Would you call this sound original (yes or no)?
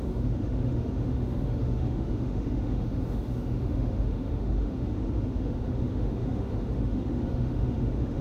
no